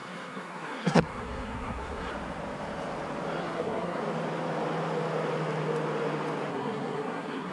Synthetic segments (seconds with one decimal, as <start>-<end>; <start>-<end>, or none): 0.0-2.1; 3.4-4.0; 6.5-7.5